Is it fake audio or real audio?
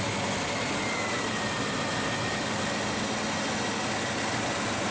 real